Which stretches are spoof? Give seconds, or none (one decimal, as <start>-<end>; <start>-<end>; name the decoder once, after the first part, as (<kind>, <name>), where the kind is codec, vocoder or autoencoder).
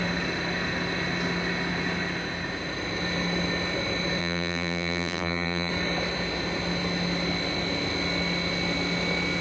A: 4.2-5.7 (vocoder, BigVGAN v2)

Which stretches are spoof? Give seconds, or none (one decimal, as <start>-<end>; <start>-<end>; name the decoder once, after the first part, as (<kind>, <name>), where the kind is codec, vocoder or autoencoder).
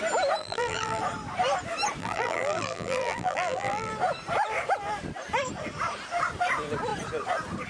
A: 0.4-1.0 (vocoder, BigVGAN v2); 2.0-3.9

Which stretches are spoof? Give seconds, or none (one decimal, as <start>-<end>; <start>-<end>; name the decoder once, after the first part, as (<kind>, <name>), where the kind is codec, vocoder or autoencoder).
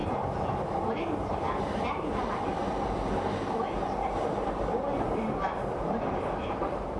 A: 0.6-2.6 (vocoder, BigVGAN v2); 4.3-7.0